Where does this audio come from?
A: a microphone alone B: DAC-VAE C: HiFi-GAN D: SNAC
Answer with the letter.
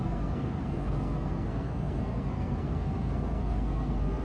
D